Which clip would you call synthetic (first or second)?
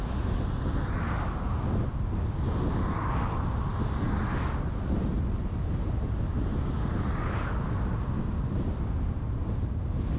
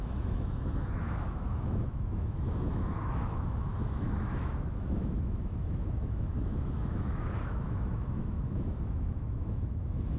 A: second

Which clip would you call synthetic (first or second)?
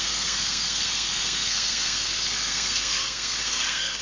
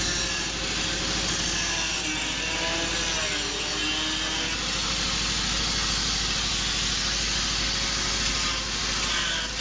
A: first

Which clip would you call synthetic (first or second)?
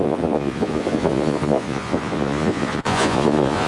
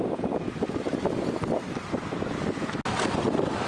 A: first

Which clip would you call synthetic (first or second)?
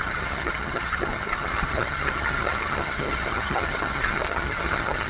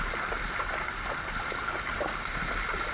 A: first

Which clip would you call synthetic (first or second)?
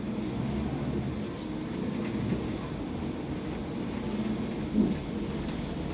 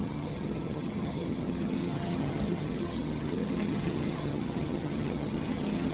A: second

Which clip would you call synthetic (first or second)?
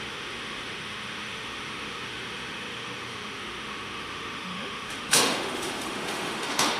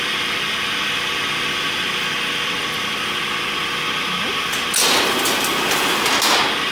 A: first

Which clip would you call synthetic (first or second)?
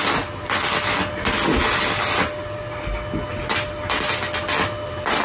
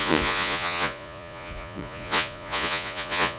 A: second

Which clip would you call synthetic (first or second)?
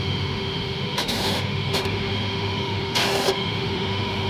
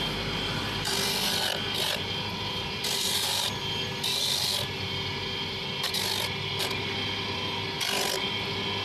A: first